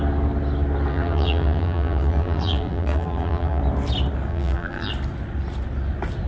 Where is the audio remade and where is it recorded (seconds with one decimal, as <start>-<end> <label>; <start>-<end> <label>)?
0.0-0.9 recorded; 0.9-3.6 remade; 3.6-4.3 recorded; 4.3-4.9 remade; 4.9-6.3 recorded